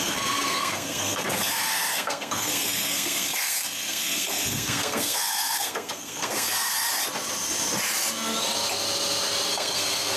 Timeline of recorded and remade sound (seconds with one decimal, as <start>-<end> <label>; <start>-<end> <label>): 0.0-6.9 remade; 6.9-9.5 recorded; 9.5-10.2 remade